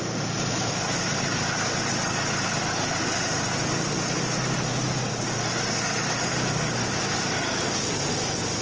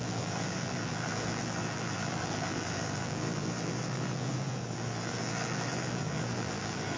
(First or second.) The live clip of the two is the first